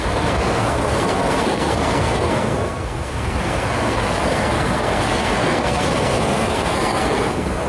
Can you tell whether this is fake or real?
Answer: fake